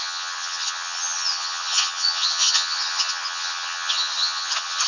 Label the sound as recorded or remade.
remade